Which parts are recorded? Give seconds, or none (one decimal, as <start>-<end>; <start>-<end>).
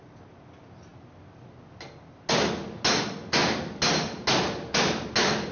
0.0-5.5